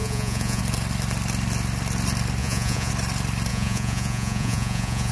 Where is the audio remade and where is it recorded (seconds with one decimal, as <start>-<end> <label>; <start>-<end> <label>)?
0.0-0.6 remade; 0.6-2.4 recorded; 2.4-2.9 remade; 2.9-3.5 recorded; 3.5-5.1 remade